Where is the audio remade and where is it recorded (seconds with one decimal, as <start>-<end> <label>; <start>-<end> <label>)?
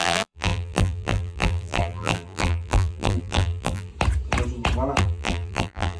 0.0-3.9 remade; 3.9-5.0 recorded; 5.0-6.0 remade